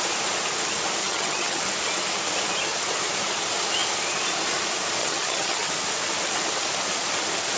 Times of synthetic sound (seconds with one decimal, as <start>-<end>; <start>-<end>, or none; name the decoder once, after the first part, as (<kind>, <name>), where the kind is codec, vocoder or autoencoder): 1.0-1.6 (vocoder, HiFi-GAN); 5.0-5.7